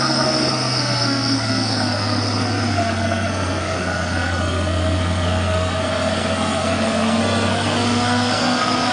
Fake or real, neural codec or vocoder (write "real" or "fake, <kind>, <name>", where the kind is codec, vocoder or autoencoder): fake, codec, SNAC